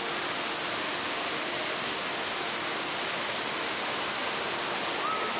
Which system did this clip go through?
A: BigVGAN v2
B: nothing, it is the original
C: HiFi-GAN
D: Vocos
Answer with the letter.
B